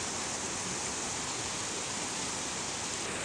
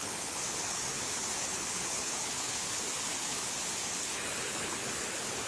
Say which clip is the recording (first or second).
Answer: first